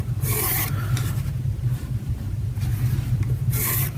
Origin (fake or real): real